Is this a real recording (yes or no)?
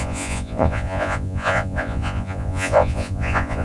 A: no